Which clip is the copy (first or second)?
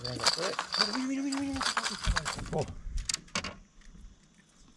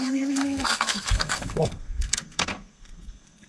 second